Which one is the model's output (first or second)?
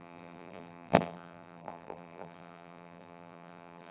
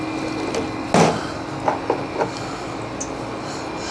first